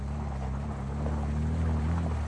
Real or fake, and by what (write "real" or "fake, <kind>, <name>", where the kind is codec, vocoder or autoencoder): real